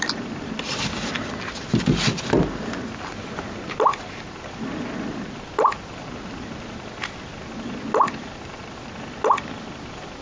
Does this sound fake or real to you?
real